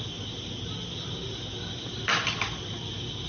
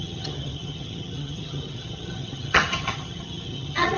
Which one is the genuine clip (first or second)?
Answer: first